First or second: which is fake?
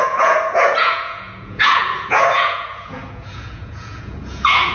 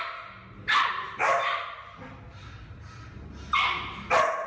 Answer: first